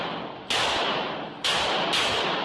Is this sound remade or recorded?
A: recorded